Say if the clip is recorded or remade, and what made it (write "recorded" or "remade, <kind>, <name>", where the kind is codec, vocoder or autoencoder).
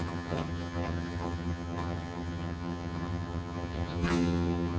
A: remade, vocoder, HiFi-GAN